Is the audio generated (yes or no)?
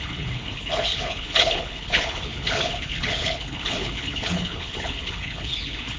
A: yes